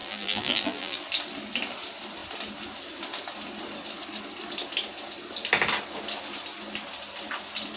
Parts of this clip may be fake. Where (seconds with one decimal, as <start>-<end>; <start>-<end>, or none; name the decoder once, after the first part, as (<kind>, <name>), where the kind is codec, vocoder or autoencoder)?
0.0-1.0 (vocoder, BigVGAN v2)